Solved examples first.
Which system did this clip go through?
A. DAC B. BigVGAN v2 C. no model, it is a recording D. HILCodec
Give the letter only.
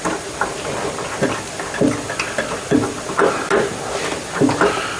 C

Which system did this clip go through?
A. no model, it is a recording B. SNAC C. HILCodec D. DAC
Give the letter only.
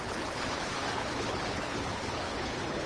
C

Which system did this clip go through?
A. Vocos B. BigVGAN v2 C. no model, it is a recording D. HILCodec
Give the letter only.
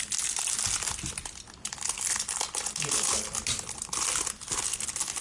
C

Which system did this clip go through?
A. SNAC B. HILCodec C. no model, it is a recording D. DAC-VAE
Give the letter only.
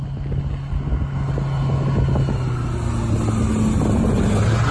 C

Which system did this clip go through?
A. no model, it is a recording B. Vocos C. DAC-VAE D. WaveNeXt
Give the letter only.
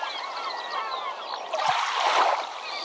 A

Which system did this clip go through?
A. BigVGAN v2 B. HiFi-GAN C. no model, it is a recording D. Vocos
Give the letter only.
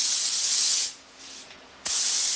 D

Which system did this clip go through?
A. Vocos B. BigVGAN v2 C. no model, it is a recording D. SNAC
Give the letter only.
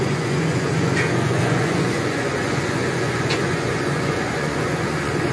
A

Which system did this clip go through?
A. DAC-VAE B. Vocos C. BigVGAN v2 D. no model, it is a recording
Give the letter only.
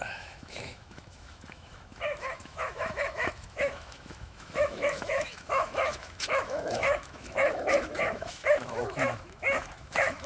A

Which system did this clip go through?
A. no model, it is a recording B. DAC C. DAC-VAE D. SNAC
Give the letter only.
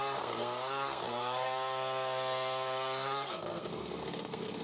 D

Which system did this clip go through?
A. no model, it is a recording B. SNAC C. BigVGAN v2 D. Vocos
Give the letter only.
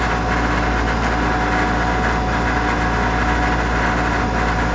A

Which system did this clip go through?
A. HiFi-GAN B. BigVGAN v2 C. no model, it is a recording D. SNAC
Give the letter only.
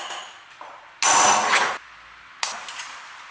C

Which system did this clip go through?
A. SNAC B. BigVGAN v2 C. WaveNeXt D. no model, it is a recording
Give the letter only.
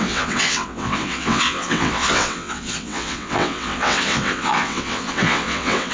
C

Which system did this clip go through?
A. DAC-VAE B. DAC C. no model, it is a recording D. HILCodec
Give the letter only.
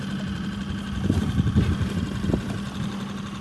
C